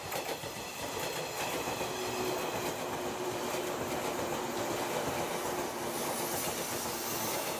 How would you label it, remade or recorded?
recorded